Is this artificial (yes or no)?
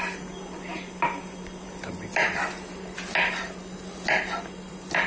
no